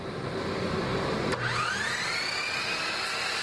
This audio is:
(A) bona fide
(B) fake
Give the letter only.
A